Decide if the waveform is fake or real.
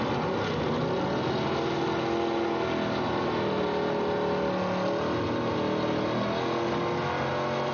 real